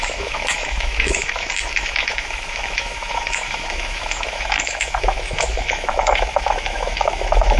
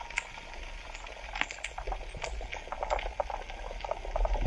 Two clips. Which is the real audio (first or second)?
second